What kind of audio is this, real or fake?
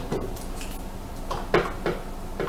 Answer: real